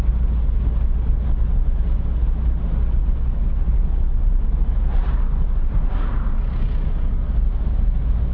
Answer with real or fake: real